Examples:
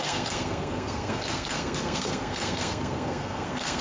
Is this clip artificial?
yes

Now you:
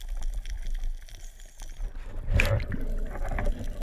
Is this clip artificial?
no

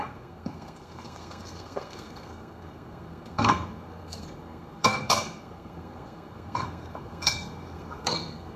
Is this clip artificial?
yes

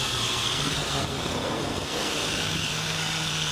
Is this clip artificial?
yes